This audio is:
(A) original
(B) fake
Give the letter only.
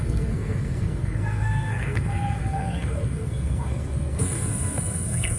B